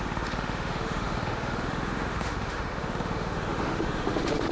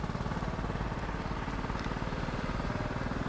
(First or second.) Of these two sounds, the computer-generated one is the first